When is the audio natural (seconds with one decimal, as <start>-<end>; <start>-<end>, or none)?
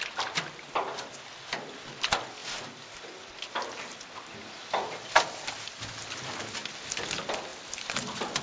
0.0-8.4